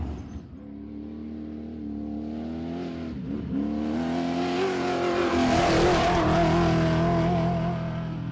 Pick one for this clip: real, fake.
real